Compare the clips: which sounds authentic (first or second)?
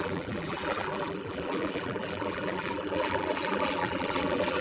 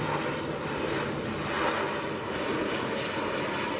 second